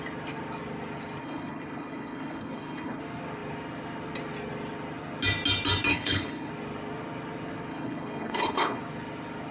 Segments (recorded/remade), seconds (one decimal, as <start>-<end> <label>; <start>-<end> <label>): 0.0-1.2 recorded; 1.2-3.0 remade; 3.0-5.9 recorded; 5.9-6.5 remade; 6.5-7.7 recorded; 7.7-8.8 remade; 8.8-9.5 recorded